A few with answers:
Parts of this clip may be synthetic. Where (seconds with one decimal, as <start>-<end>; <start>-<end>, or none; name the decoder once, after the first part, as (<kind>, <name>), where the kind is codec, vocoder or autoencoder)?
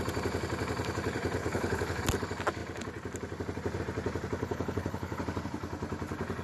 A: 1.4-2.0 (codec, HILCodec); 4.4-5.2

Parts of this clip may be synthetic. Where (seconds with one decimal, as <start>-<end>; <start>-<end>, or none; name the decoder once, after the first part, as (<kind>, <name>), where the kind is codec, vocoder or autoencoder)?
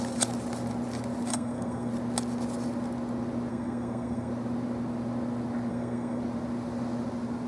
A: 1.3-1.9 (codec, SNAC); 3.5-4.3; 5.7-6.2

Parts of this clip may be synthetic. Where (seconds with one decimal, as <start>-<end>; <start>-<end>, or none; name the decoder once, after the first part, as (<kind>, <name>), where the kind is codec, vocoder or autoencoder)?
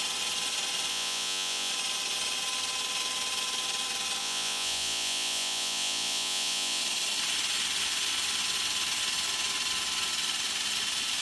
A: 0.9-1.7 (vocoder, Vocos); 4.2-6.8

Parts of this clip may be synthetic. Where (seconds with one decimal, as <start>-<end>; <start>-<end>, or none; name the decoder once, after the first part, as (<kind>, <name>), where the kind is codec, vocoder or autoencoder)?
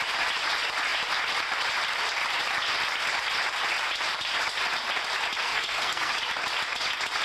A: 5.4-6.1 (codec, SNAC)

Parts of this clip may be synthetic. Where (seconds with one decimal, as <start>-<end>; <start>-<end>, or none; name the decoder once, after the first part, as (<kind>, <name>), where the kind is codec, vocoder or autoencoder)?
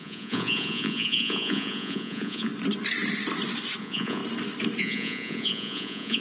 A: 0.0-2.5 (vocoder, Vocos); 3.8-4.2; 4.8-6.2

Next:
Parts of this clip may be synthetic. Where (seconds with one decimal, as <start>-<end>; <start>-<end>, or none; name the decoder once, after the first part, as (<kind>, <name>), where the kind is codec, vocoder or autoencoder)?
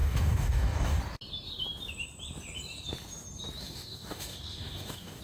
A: 0.0-1.0 (codec, DAC); 3.6-5.2